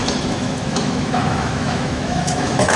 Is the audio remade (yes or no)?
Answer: yes